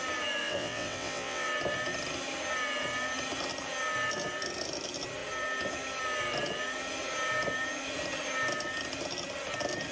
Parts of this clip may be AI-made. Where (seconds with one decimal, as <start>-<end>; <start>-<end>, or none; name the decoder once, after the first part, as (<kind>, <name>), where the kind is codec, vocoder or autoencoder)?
0.4-1.5 (vocoder, WaveNeXt)